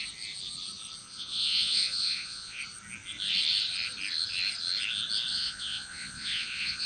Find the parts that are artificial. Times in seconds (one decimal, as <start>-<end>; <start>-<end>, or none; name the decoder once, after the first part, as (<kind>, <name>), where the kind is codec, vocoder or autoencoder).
1.0-2.6 (vocoder, Vocos); 5.3-6.9